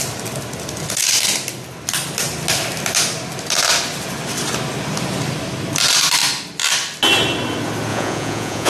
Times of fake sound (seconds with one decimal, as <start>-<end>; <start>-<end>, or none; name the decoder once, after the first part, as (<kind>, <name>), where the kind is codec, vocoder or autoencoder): 7.9-8.7 (vocoder, Vocos)